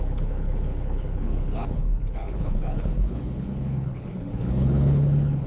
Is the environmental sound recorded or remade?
remade